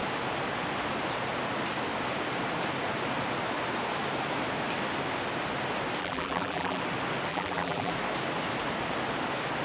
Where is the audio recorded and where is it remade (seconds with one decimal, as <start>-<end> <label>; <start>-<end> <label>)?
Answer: 0.0-6.0 recorded; 6.0-6.8 remade; 6.8-7.3 recorded; 7.3-7.9 remade; 7.9-9.6 recorded